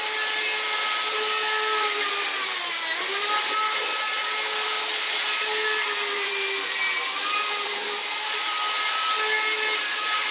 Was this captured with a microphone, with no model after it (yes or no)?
no